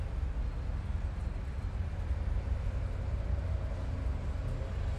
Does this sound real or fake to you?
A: real